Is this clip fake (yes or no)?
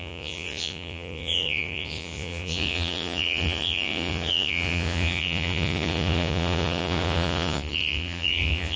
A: yes